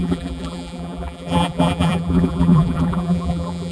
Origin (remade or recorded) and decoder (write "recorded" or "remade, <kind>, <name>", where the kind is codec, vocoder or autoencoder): remade, vocoder, BigVGAN v2